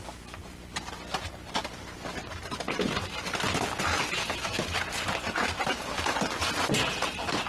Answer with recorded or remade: recorded